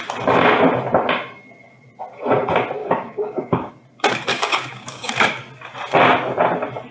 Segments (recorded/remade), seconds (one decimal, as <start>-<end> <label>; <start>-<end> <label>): 0.0-2.8 recorded; 2.8-3.7 remade; 3.7-4.3 recorded; 4.3-5.1 remade; 5.1-6.9 recorded